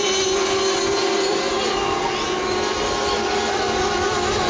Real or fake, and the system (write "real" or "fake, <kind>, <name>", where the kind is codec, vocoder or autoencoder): real